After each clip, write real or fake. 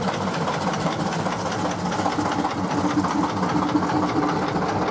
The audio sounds real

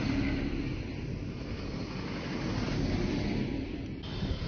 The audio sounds real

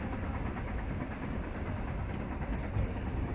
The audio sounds fake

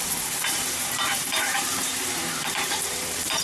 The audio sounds fake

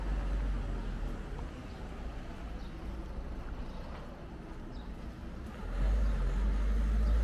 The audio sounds real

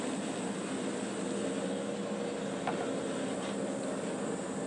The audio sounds real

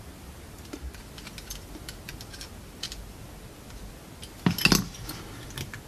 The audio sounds real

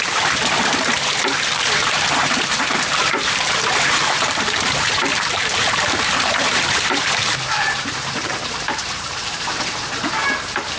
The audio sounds fake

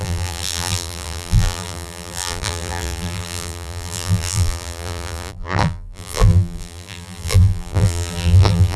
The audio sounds fake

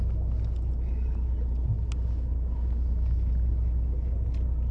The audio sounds real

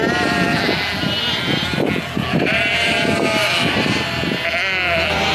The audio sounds real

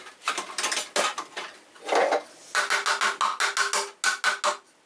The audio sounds real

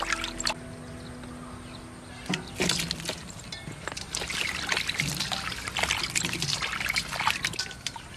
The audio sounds real